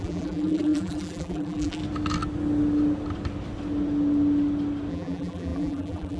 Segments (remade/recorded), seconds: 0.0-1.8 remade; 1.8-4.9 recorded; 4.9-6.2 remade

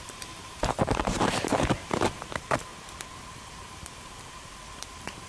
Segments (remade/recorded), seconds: 0.0-2.7 remade; 2.7-3.4 recorded; 3.4-5.3 remade

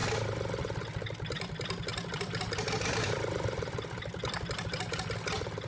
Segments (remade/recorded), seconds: 0.0-0.6 recorded; 0.6-5.7 remade